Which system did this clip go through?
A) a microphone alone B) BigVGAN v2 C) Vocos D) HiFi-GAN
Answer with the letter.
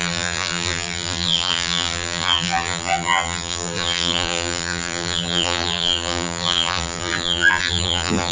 B